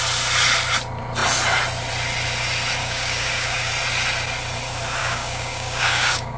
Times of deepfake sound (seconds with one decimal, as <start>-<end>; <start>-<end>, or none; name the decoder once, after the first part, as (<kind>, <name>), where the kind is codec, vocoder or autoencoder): 2.8-3.7 (codec, DAC); 5.0-6.4